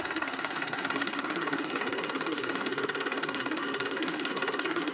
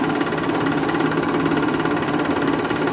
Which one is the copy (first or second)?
first